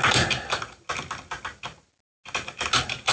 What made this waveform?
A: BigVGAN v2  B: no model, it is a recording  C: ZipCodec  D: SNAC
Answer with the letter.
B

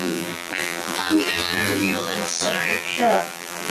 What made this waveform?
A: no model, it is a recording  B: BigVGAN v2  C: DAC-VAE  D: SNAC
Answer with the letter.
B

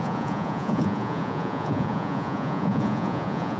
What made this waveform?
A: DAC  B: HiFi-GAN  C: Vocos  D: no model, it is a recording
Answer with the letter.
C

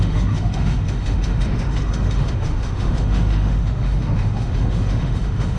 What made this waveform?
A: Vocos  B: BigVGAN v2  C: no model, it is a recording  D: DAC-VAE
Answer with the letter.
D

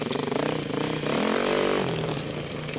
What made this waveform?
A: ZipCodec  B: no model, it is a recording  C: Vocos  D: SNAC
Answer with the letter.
B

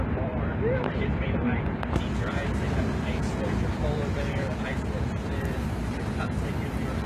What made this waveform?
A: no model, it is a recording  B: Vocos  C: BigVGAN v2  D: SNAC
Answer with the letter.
C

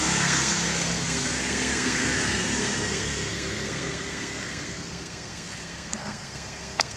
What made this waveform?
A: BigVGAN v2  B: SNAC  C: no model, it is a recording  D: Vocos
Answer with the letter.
B